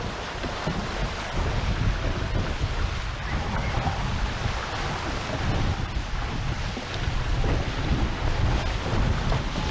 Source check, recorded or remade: recorded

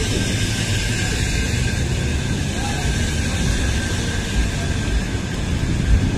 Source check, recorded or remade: recorded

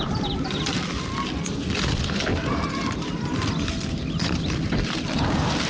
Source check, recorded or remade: recorded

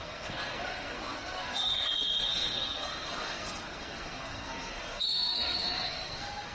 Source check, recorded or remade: remade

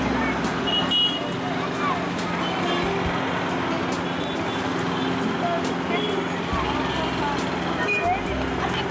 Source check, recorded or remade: recorded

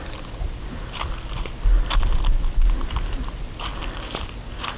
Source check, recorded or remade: recorded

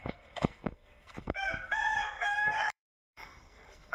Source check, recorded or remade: remade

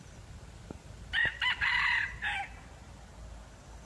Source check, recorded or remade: recorded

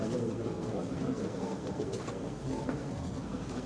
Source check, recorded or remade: remade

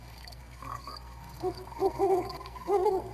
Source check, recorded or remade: remade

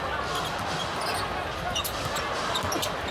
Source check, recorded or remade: recorded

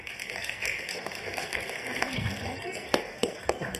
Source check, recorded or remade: remade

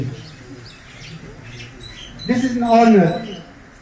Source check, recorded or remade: recorded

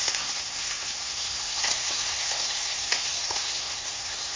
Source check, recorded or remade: remade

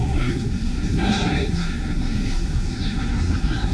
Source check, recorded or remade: remade